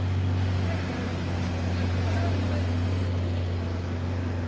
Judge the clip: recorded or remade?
recorded